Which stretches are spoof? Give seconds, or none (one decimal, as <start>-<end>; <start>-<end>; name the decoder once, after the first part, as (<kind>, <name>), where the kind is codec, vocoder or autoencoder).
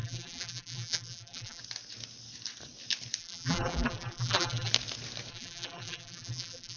0.0-1.6 (vocoder, BigVGAN v2); 3.2-4.7; 5.3-6.8